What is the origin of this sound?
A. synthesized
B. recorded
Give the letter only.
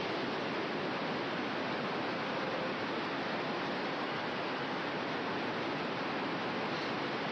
B